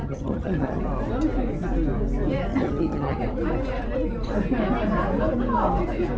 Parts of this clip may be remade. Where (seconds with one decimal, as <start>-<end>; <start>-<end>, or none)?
0.0-0.8; 2.5-3.2

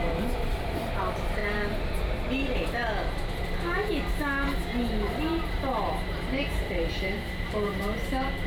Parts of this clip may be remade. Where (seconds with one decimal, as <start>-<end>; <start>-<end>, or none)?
0.0-1.4; 5.5-8.5

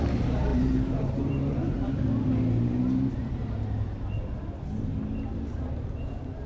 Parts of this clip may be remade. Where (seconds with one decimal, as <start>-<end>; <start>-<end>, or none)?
0.5-1.9

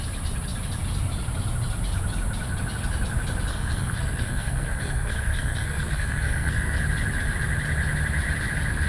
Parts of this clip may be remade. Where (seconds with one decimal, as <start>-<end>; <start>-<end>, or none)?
3.5-6.8